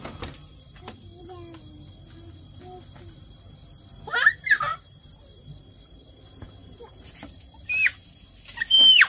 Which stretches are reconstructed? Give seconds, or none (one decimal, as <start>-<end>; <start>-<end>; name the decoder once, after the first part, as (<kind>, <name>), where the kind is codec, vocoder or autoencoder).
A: 4.7-5.2 (vocoder, BigVGAN v2); 6.6-7.3